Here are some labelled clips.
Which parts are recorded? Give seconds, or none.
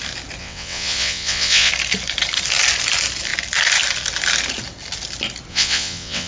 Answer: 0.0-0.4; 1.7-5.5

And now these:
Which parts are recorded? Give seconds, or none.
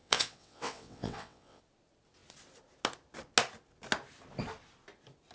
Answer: 1.6-5.3